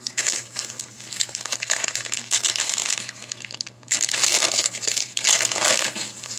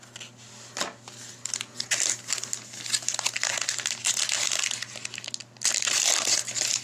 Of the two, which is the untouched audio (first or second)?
second